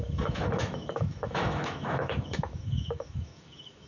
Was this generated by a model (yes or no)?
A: yes